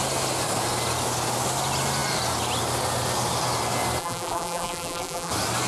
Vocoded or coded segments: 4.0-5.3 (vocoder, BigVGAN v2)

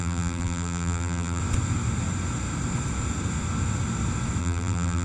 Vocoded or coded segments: 0.0-1.4 (vocoder, BigVGAN v2); 4.4-5.0

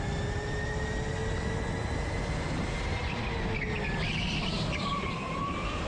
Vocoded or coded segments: 4.9-5.9 (vocoder, BigVGAN v2)

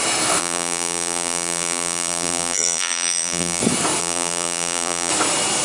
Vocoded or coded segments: 0.4-3.6 (vocoder, BigVGAN v2); 4.0-5.1

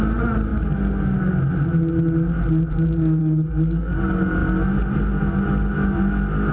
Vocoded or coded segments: 3.2-4.0 (codec, DAC)

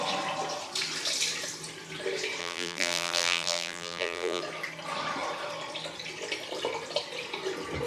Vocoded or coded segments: 2.4-4.4 (vocoder, BigVGAN v2)

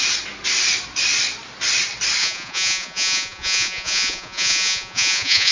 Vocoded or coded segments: 2.2-5.5 (vocoder, Vocos)

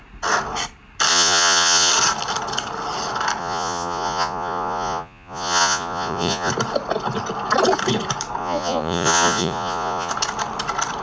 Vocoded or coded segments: 1.1-1.9 (vocoder, Vocos); 3.4-6.5; 8.4-10.1